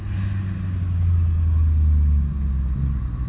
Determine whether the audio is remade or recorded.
recorded